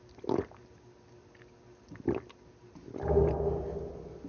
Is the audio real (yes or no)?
yes